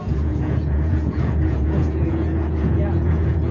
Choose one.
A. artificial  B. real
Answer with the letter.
A